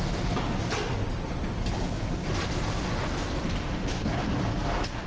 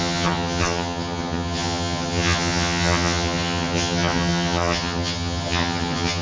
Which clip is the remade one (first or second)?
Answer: second